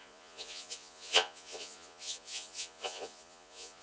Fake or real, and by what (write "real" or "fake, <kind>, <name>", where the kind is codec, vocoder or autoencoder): fake, vocoder, Vocos